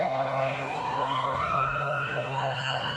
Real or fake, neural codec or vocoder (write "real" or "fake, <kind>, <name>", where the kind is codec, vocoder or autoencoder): fake, codec, SNAC